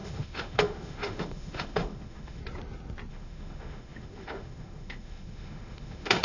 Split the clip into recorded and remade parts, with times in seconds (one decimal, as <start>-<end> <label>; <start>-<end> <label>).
0.0-2.4 remade; 2.4-3.1 recorded; 3.1-6.2 remade